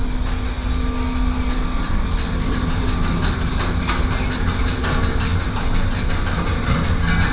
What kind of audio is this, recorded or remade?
recorded